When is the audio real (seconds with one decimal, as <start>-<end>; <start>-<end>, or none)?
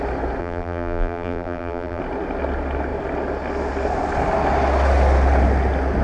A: 0.0-0.4; 2.0-6.0